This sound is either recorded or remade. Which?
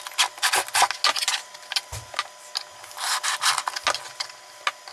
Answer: recorded